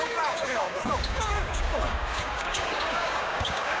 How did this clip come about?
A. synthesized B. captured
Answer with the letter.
A